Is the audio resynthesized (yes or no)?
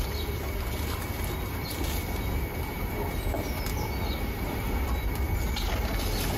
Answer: no